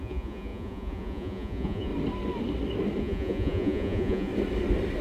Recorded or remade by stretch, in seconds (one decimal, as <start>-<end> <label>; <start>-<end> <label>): 0.0-1.9 remade; 1.9-3.0 recorded; 3.0-4.3 remade; 4.3-5.0 recorded